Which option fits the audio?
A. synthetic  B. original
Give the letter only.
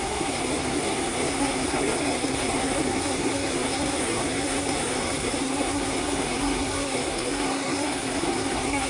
A